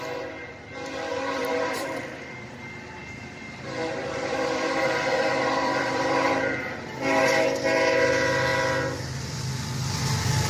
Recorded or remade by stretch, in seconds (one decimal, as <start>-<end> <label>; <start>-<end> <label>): 0.0-1.1 recorded; 1.1-2.5 remade; 2.5-3.0 recorded; 3.0-6.3 remade; 6.3-10.5 recorded